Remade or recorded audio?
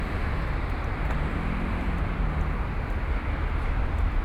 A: recorded